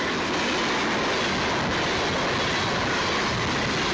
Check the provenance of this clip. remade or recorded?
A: recorded